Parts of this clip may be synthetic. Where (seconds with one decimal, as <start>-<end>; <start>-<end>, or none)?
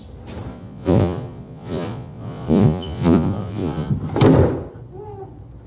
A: 0.5-3.9